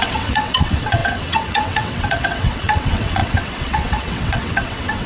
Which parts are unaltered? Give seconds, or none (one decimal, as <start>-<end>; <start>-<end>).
none